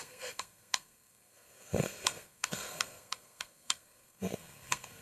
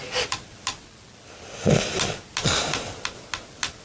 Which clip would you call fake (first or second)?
first